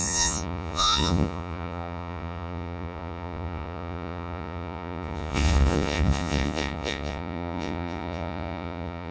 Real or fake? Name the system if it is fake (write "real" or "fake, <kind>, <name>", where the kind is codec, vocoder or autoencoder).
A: fake, vocoder, Vocos